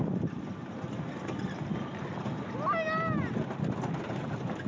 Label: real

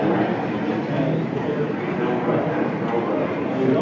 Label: real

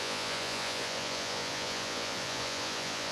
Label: fake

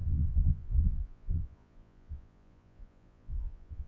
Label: fake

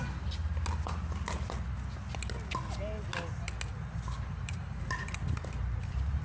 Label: real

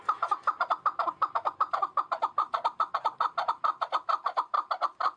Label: real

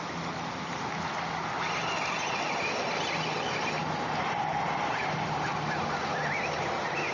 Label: real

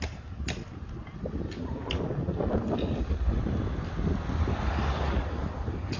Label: real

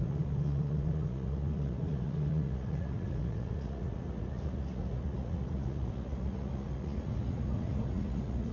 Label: fake